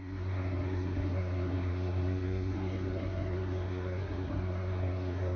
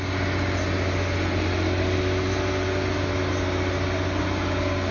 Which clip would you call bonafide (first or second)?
second